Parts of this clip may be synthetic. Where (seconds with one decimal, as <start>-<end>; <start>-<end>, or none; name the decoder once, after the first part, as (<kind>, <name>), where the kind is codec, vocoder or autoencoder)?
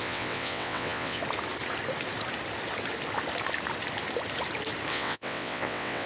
0.0-1.2 (vocoder, WaveNeXt); 4.9-6.1